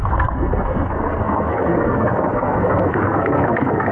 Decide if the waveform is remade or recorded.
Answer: remade